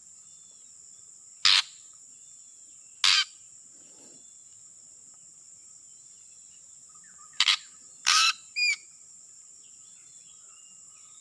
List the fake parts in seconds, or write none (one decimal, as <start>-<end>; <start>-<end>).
5.3-10.2